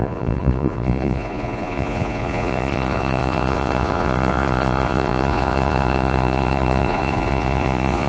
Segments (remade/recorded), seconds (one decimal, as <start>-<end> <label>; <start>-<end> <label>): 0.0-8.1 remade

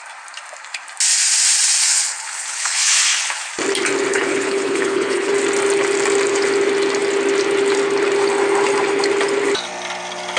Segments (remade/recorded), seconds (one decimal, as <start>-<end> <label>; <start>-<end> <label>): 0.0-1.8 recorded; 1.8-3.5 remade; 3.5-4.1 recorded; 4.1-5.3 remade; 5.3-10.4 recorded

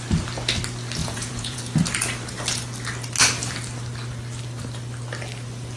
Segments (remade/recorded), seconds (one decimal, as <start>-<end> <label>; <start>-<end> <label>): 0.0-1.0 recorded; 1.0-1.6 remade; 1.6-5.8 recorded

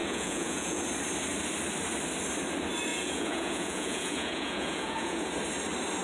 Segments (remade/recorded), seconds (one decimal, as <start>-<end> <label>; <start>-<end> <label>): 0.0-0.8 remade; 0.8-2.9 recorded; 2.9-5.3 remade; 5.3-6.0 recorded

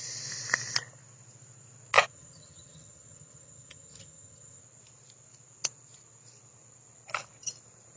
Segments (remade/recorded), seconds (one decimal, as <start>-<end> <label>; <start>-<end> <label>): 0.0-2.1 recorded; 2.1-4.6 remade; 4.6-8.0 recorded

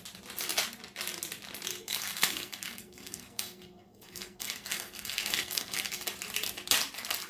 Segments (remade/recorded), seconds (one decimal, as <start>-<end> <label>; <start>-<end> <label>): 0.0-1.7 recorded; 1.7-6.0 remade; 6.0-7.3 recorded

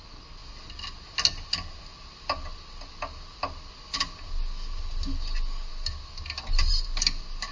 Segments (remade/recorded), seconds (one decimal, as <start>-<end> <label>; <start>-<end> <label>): 0.0-7.5 recorded

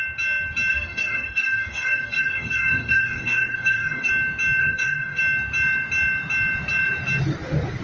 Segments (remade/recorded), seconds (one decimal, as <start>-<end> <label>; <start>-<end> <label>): 0.0-0.7 recorded; 0.7-4.1 remade; 4.1-4.6 recorded; 4.6-5.2 remade; 5.2-7.8 recorded